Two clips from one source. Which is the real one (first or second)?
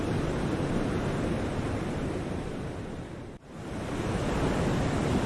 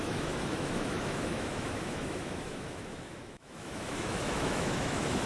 first